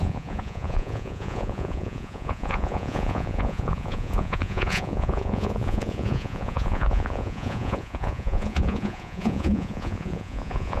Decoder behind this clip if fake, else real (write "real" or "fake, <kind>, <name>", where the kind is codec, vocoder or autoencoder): fake, vocoder, Vocos